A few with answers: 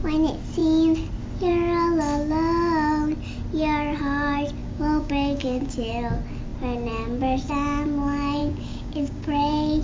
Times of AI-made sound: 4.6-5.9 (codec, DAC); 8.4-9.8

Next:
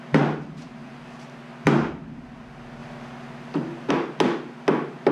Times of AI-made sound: none